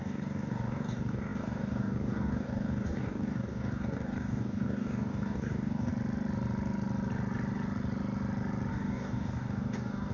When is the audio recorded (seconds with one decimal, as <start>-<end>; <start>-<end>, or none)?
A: 5.9-8.7